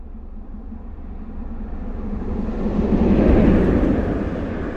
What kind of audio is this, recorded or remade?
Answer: remade